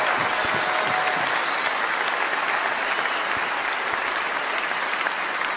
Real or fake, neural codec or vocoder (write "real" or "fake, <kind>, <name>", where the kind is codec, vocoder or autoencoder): real